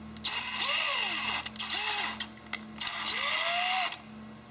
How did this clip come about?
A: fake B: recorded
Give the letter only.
B